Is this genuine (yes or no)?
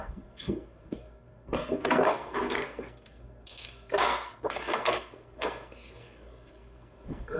no